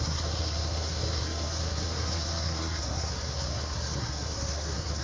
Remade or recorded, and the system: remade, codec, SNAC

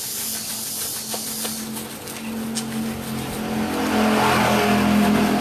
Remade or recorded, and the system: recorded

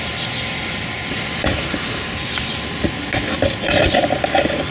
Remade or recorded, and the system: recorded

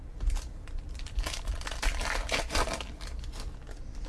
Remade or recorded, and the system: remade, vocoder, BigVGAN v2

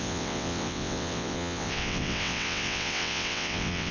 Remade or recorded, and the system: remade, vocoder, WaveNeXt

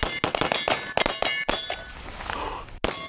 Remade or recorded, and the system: recorded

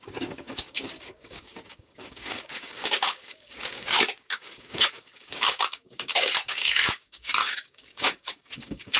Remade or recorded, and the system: remade, codec, DAC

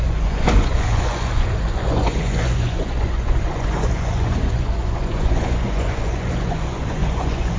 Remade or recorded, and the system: remade, vocoder, Vocos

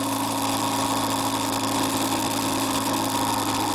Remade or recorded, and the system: recorded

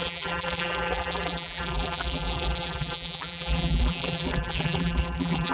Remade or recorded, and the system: remade, vocoder, BigVGAN v2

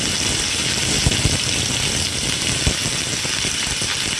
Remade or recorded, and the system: recorded